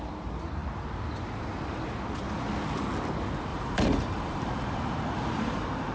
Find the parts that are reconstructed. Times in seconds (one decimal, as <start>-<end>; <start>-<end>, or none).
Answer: 3.5-5.9